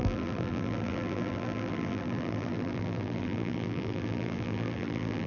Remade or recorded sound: remade